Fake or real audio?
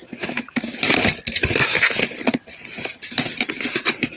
real